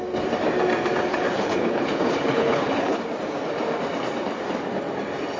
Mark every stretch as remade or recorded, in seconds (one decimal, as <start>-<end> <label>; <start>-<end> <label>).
0.0-1.1 recorded; 1.1-3.0 remade; 3.0-5.4 recorded